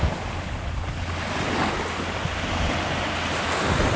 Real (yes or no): yes